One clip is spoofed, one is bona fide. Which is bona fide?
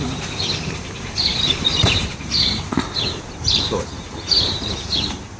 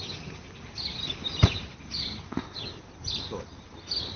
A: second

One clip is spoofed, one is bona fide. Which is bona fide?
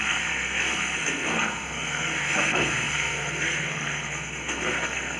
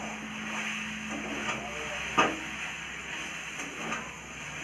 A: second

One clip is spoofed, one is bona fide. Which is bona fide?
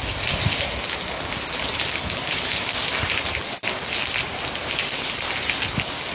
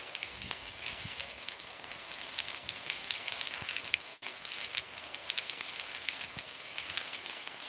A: first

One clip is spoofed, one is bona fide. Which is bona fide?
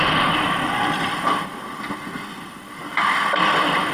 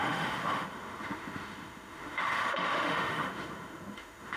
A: first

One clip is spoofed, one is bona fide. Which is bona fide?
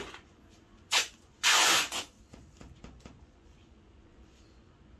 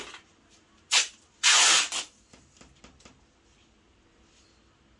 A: second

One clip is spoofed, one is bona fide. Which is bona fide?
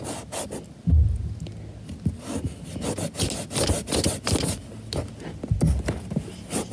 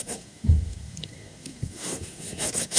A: first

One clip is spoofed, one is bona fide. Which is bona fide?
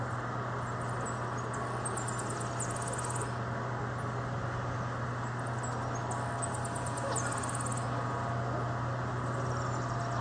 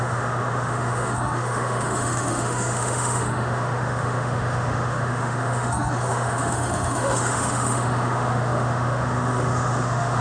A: first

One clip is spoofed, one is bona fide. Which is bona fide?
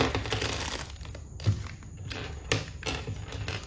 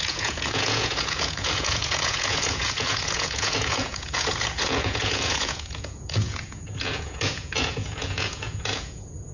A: first